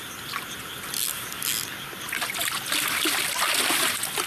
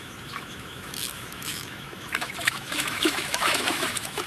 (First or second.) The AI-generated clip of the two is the second